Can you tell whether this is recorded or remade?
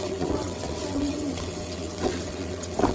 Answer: remade